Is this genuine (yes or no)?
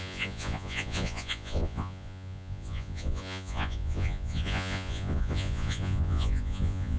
no